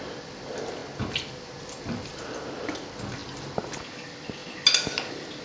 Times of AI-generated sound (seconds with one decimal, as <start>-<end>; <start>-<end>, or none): none